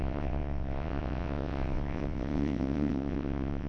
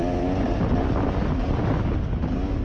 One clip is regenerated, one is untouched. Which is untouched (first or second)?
second